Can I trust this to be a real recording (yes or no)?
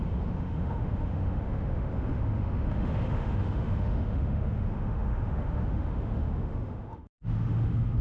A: no